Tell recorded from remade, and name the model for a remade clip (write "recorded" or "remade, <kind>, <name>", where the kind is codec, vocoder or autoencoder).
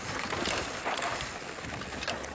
recorded